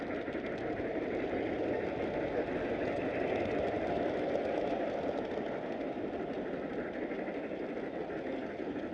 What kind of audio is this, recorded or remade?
recorded